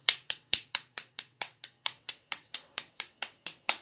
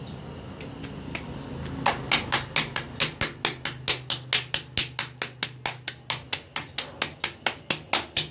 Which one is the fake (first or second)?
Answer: first